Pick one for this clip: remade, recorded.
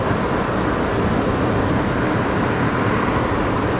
recorded